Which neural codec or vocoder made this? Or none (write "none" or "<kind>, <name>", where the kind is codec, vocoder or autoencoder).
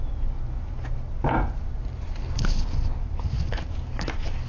none